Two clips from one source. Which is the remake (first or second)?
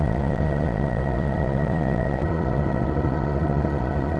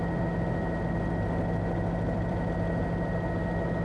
first